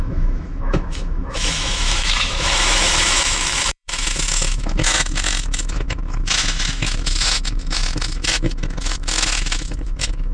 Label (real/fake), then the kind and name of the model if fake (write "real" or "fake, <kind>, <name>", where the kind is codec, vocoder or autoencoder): fake, autoencoder, DAC-VAE